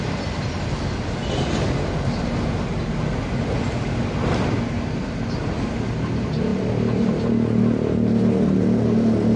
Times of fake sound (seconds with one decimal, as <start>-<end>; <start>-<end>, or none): none